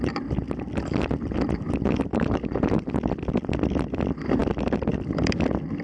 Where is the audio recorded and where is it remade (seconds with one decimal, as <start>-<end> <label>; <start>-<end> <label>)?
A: 0.0-2.1 recorded; 2.1-2.9 remade; 2.9-5.8 recorded